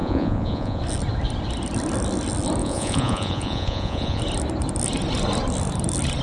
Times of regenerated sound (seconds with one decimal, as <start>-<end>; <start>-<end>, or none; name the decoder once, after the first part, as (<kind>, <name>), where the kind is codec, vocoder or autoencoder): 0.0-0.8 (vocoder, Vocos); 2.6-4.2